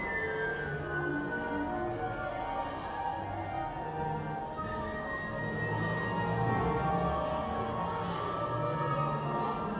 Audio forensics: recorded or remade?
recorded